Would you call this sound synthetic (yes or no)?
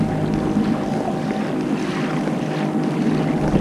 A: no